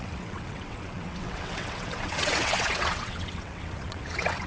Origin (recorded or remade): remade